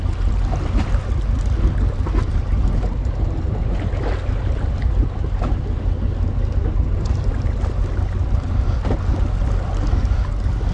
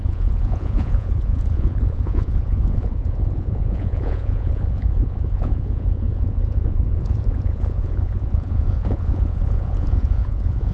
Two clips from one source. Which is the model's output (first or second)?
second